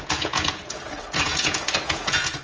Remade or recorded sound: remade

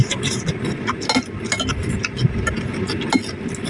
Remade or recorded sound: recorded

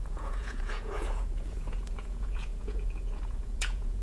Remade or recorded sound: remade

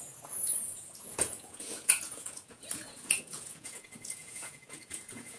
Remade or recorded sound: remade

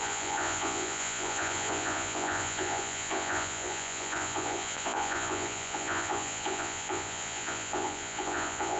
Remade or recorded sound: remade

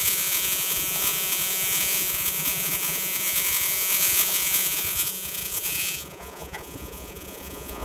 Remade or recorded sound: remade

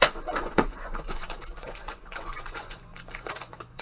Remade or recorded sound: remade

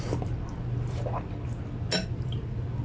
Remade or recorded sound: recorded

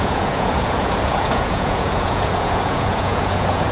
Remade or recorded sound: remade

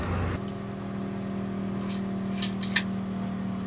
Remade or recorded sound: recorded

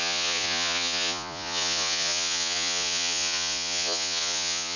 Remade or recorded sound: remade